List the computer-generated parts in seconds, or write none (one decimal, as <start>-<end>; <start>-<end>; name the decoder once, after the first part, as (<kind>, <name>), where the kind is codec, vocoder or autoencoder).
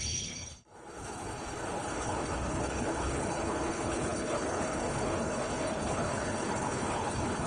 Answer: 0.0-7.5 (codec, HILCodec)